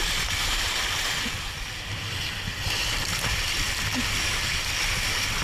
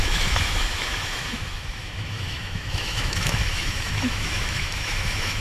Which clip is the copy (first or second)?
second